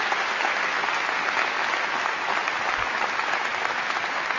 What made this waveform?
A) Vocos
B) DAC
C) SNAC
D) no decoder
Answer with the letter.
D